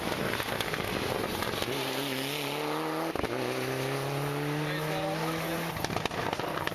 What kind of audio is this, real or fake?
real